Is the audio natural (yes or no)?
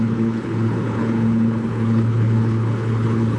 no